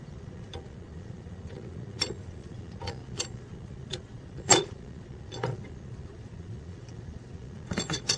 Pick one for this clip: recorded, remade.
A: remade